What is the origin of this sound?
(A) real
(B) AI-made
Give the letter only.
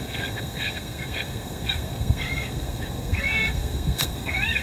B